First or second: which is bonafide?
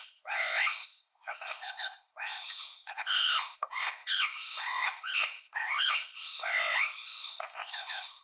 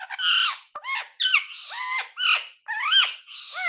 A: second